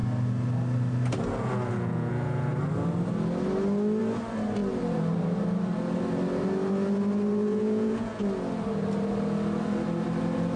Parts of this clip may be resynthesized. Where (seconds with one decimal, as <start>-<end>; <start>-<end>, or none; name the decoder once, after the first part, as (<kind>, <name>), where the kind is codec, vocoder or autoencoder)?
7.5-8.2 (vocoder, Vocos)